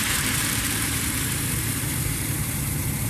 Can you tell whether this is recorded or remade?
remade